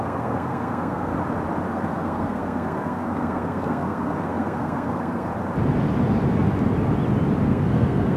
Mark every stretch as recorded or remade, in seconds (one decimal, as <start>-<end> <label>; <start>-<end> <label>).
0.0-1.1 remade; 1.1-1.7 recorded; 1.7-5.3 remade; 5.3-7.5 recorded; 7.5-8.2 remade